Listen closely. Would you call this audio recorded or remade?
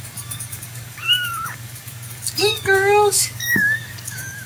remade